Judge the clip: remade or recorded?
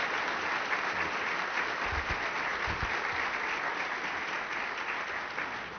recorded